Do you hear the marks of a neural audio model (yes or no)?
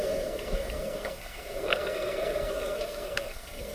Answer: yes